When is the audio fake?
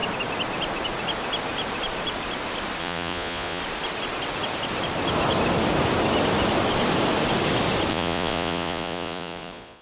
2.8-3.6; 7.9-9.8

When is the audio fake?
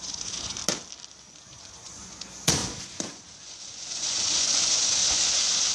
0.0-0.6; 1.2-5.7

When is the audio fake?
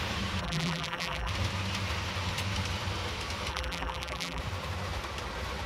0.4-1.3; 3.5-4.4